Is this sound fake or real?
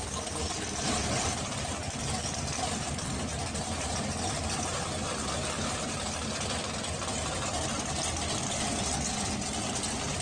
real